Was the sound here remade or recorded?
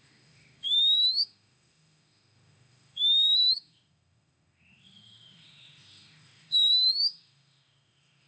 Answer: remade